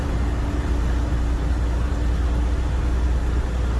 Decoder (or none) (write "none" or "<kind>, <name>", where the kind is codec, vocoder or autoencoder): none